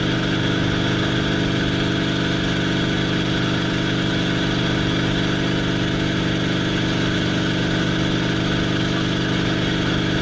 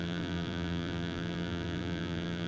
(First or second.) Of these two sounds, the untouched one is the first